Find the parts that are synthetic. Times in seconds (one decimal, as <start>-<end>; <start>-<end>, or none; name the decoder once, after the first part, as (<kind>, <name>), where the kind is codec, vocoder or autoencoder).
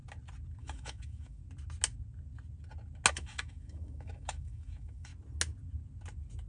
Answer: 0.6-1.4 (autoencoder, DAC-VAE); 3.1-5.1